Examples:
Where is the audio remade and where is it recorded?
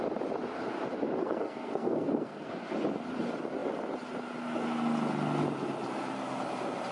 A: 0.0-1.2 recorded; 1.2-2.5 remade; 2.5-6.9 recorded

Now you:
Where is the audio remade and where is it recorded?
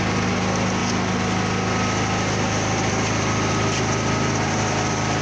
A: 0.0-5.2 recorded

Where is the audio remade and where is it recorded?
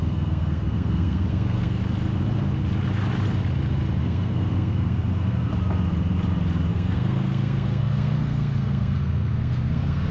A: 0.0-1.8 remade; 1.8-4.0 recorded; 4.0-5.5 remade; 5.5-6.7 recorded; 6.7-10.1 remade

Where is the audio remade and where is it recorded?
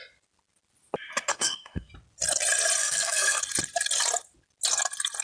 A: 0.0-1.3 recorded; 1.3-1.9 remade; 1.9-2.8 recorded; 2.8-3.4 remade; 3.4-5.2 recorded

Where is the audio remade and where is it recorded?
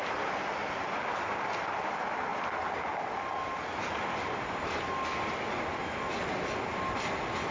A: 0.0-7.5 recorded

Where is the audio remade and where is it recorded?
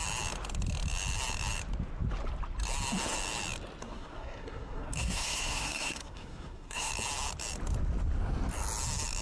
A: 0.0-3.8 recorded; 3.8-6.9 remade; 6.9-9.2 recorded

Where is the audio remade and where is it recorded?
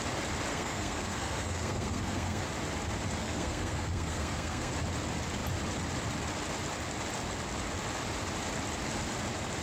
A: 0.0-0.5 recorded; 0.5-2.4 remade; 2.4-3.2 recorded; 3.2-4.7 remade; 4.7-9.6 recorded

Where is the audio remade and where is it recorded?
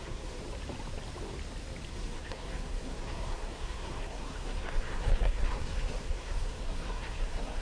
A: 0.0-0.4 remade; 0.4-1.9 recorded; 1.9-7.6 remade